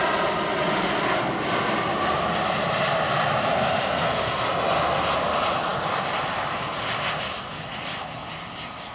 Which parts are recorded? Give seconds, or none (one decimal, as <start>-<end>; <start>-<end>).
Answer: 0.0-8.9